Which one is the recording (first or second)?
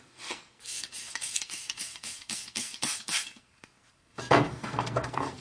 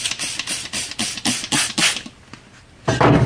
second